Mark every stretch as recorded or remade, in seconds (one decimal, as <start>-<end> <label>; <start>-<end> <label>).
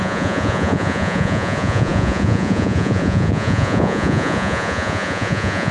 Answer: 0.0-5.7 remade